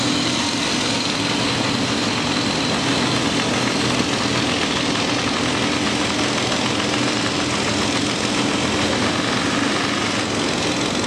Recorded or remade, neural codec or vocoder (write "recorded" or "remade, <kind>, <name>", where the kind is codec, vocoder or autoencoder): recorded